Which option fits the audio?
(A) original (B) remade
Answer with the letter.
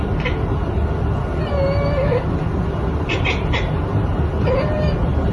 A